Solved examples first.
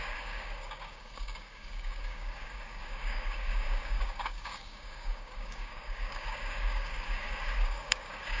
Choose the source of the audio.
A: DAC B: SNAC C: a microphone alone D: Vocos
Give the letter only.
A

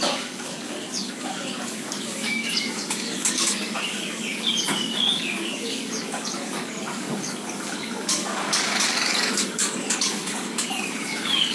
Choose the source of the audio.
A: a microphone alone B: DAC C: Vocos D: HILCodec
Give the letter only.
B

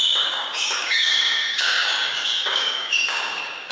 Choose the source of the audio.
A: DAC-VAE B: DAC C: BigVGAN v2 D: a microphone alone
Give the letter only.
B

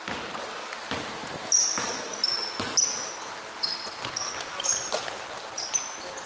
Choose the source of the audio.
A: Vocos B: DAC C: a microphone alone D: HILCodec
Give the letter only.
C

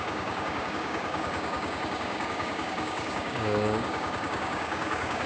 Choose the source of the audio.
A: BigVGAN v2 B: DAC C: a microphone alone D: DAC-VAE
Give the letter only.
B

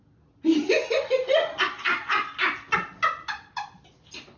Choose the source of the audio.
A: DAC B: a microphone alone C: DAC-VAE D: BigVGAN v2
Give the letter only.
B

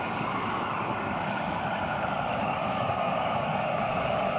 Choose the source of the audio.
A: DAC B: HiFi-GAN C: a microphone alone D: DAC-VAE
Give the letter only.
A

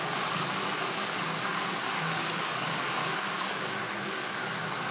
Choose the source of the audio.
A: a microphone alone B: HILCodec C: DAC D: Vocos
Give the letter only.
C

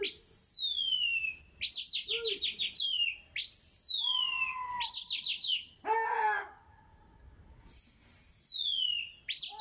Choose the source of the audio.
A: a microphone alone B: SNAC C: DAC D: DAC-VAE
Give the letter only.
A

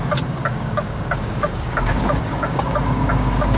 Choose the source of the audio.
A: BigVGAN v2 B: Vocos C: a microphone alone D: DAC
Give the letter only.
D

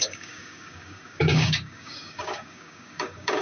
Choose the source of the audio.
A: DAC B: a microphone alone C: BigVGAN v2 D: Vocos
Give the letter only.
A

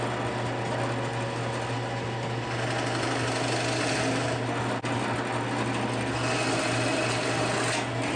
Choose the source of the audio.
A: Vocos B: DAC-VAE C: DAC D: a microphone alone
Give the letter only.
D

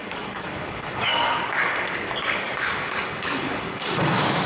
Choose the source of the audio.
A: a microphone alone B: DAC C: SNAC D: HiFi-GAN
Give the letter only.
B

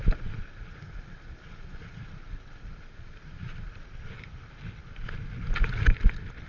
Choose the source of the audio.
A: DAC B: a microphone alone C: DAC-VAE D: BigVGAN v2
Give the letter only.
B